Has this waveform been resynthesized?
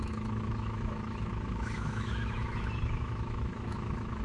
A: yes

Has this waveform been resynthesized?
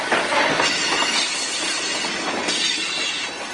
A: no